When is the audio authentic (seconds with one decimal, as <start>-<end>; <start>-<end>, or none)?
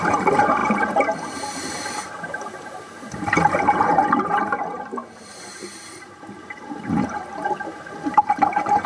4.0-5.3